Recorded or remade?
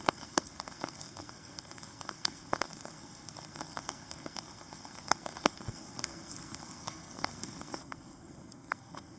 remade